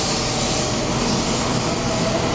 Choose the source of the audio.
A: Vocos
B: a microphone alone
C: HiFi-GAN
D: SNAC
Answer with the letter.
B